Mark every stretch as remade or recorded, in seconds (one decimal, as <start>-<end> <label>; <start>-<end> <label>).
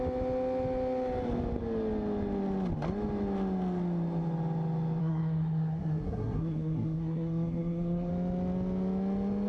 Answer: 0.0-5.0 recorded; 5.0-8.1 remade; 8.1-9.5 recorded